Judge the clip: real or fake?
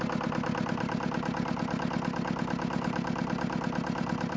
real